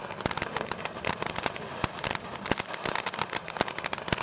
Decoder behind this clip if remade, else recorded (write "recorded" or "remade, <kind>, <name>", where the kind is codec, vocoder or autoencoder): recorded